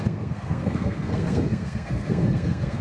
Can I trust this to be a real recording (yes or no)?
no